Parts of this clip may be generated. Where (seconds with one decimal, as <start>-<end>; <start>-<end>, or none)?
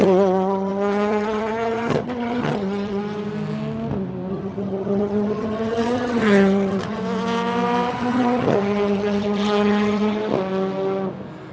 0.0-3.0; 4.3-7.0; 7.9-10.2